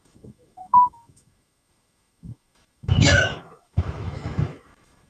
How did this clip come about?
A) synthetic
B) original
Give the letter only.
A